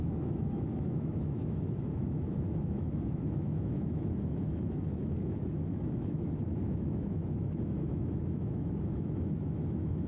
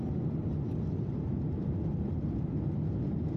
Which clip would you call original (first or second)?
second